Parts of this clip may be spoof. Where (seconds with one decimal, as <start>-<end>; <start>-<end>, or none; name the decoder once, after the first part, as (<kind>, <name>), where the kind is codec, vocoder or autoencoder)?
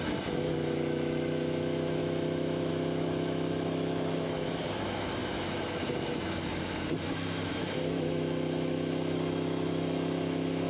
0.0-2.0 (autoencoder, DAC-VAE); 2.7-10.7